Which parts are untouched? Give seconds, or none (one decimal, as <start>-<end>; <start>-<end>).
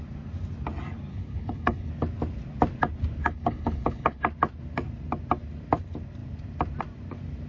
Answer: 0.0-1.1; 1.9-3.2; 4.2-7.5